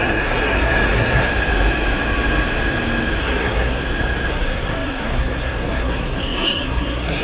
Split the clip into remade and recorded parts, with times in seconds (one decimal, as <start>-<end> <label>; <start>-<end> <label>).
0.0-1.3 remade; 1.3-3.2 recorded; 3.2-3.8 remade; 3.8-4.3 recorded; 4.3-7.2 remade